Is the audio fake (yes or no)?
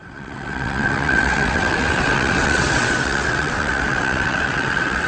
yes